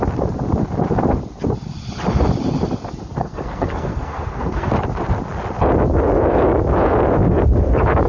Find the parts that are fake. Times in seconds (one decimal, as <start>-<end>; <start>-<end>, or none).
3.2-4.7